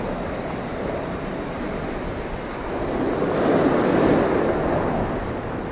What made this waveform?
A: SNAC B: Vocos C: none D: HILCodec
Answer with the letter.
C